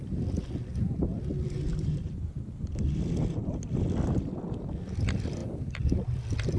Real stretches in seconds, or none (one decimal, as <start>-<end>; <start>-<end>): 0.0-1.1; 5.0-5.4